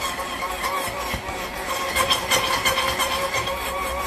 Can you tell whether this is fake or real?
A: fake